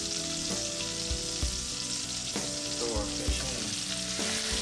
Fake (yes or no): no